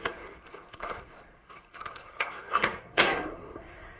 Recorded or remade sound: remade